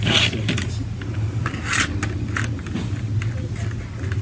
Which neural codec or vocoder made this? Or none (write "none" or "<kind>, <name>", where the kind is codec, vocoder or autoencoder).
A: none